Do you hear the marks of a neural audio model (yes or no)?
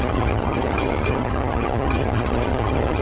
yes